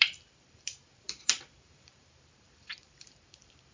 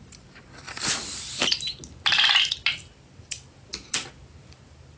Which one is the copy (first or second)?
first